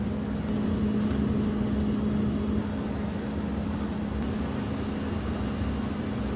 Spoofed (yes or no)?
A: no